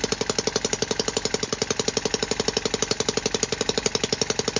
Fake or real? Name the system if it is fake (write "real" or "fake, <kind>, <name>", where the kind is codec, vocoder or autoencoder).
real